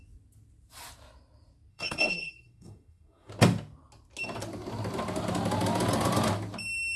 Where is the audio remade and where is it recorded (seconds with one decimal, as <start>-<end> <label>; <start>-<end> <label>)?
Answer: 0.0-1.7 recorded; 1.7-3.3 remade; 3.3-7.0 recorded